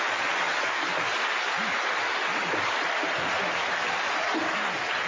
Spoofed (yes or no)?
no